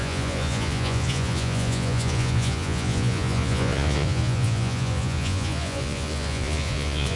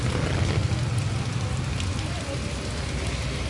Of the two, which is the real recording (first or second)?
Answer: second